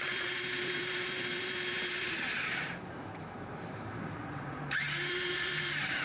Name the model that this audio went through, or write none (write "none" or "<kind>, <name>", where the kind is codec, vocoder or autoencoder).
vocoder, BigVGAN v2